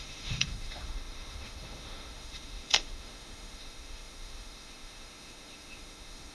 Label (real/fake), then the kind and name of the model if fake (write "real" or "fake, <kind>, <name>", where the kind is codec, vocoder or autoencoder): fake, autoencoder, DAC-VAE